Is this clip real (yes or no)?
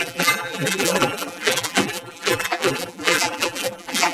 no